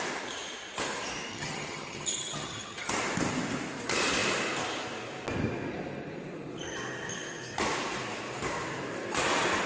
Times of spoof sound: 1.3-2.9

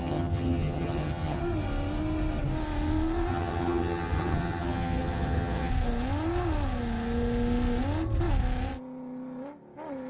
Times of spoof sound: 0.0-1.4; 3.3-5.7

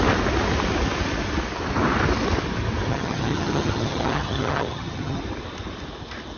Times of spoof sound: 2.9-5.2

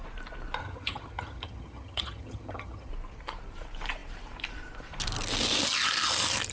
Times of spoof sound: 0.6-2.9